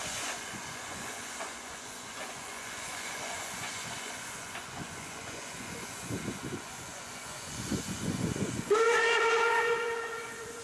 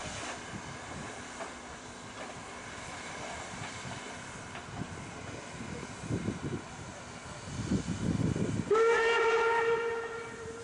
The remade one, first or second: first